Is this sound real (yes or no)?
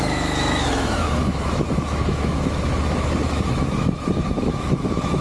no